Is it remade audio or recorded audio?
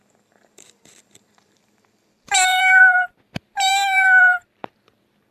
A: remade